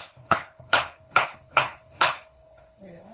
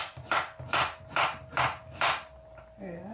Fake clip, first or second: first